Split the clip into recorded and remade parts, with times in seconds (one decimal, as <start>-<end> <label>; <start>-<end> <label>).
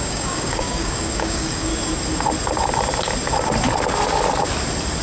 0.0-1.7 remade; 1.7-5.0 recorded